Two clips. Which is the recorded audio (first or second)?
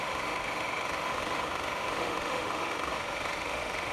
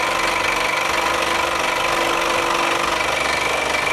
second